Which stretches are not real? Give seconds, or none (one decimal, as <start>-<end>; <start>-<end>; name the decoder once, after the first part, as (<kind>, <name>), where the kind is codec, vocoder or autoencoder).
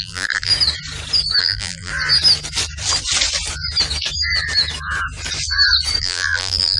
0.0-0.5 (vocoder, BigVGAN v2); 1.4-1.9; 6.0-6.8